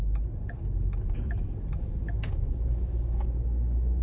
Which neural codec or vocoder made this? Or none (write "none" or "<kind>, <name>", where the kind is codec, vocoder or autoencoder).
none